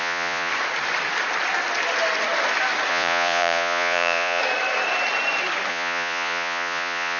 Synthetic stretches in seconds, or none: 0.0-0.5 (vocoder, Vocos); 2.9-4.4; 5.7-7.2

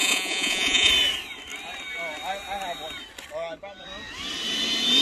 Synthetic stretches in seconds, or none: 0.0-0.9 (vocoder, Vocos)

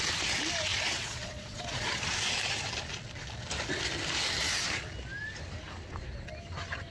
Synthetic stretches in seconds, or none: 0.7-2.0 (vocoder, Vocos)

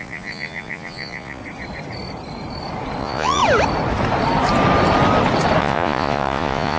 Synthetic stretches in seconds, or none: 0.0-1.4 (vocoder, Vocos); 3.0-3.4; 5.6-6.8

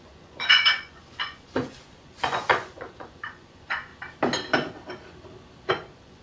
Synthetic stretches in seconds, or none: 0.0-3.9 (vocoder, Vocos); 5.7-6.2

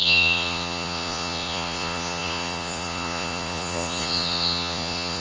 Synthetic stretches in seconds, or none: 0.0-5.2 (vocoder, Vocos)